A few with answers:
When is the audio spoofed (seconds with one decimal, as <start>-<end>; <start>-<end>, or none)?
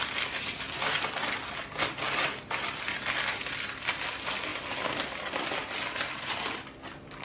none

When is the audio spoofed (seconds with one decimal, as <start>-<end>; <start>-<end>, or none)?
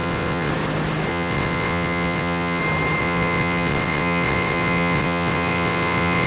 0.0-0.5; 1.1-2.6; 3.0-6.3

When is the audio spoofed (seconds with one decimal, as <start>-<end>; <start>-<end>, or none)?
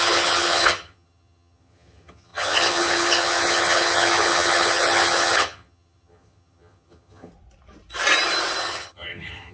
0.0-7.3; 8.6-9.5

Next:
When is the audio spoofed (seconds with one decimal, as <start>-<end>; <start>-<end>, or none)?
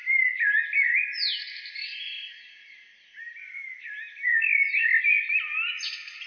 1.4-2.1; 3.8-4.3; 5.0-6.3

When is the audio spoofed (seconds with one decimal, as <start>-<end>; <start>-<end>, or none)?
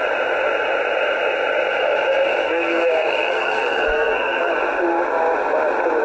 2.4-4.5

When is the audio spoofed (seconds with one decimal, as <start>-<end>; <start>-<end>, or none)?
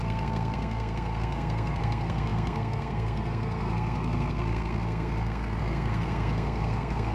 0.0-7.1